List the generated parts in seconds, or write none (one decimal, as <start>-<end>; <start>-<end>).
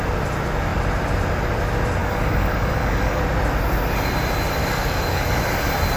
2.0-3.2; 4.6-5.4